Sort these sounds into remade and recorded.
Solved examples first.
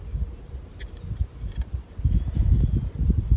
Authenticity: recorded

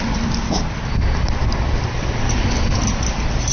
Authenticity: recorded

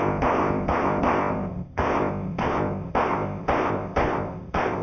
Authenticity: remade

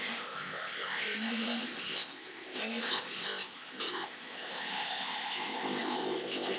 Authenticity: remade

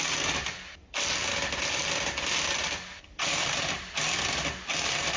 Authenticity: recorded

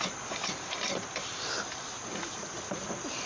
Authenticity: recorded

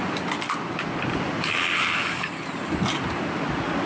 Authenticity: recorded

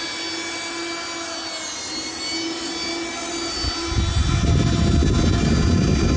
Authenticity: recorded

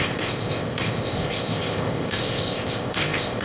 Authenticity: remade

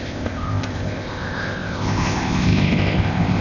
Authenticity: remade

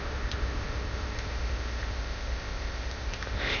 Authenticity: remade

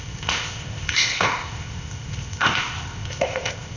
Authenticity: remade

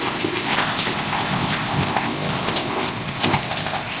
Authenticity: remade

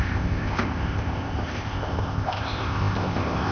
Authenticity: remade